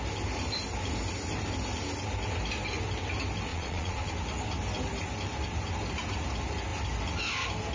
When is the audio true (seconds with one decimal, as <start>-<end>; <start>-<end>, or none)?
0.0-3.5; 4.1-7.7